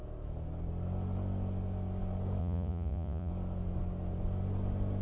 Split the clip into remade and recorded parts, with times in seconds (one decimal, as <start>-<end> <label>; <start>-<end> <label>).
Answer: 0.0-2.4 recorded; 2.4-3.3 remade; 3.3-5.0 recorded